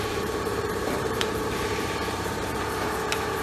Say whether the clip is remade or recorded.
remade